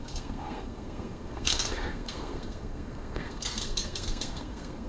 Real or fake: fake